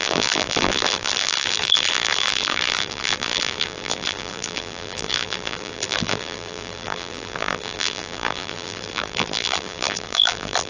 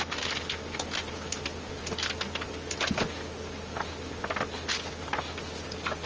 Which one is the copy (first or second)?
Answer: first